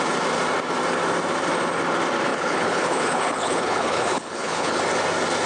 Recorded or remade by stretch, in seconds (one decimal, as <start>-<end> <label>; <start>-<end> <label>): 0.0-2.3 recorded; 2.3-4.8 remade; 4.8-5.5 recorded